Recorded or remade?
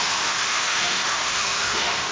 remade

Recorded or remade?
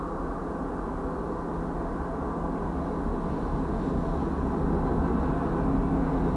recorded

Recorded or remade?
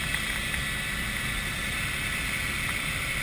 remade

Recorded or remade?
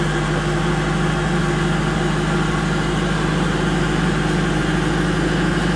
recorded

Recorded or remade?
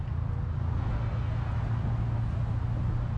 recorded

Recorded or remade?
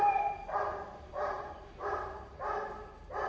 remade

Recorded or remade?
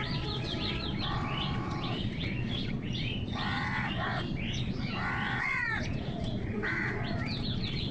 remade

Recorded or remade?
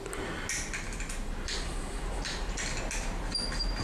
recorded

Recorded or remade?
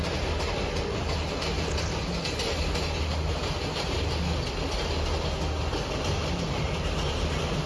recorded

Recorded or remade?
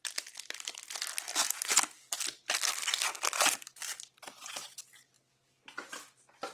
recorded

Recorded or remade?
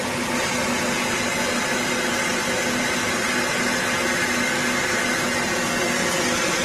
recorded